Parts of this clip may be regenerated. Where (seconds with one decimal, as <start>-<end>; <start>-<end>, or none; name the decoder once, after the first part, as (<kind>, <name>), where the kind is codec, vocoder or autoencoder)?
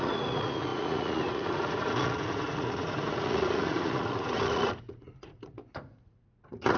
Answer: 0.0-6.8 (vocoder, Vocos)